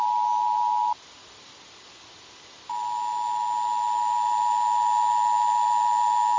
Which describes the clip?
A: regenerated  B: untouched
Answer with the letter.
B